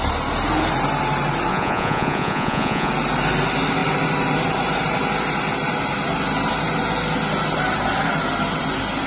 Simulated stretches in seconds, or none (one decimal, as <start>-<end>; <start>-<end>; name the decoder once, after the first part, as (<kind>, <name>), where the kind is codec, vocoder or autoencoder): 1.5-2.9 (vocoder, Vocos)